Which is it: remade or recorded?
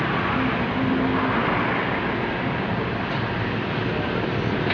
recorded